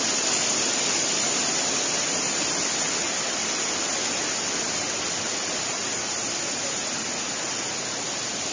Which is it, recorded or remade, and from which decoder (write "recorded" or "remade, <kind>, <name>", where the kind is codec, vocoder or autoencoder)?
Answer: recorded